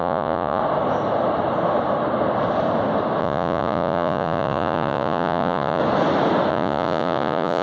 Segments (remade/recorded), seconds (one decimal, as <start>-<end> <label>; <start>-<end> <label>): 0.0-0.6 remade; 0.6-3.2 recorded; 3.2-5.8 remade; 5.8-6.5 recorded; 6.5-7.6 remade